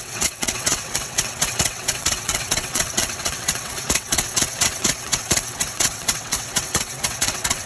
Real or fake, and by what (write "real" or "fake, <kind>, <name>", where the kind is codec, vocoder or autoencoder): fake, vocoder, WaveNeXt